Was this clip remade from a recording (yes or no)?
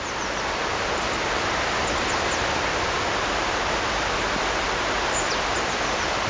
no